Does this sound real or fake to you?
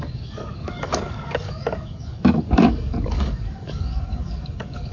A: fake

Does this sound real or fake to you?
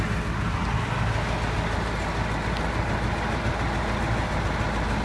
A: real